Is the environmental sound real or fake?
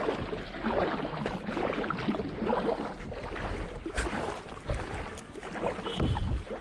real